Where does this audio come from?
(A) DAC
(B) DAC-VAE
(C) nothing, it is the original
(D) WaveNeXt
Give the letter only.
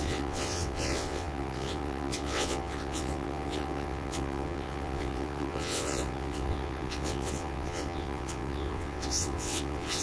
D